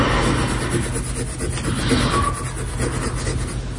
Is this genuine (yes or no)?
yes